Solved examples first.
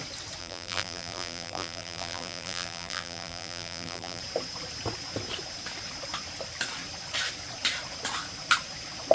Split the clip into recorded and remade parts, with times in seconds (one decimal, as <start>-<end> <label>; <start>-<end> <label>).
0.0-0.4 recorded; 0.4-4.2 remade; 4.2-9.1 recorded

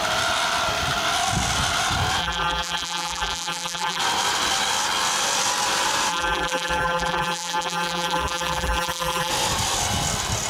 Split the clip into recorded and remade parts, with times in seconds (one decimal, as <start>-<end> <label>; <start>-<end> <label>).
0.0-2.2 recorded; 2.2-4.0 remade; 4.0-6.1 recorded; 6.1-9.3 remade; 9.3-10.5 recorded

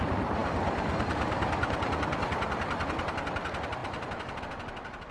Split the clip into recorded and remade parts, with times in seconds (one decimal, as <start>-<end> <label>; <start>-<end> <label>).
0.0-5.1 recorded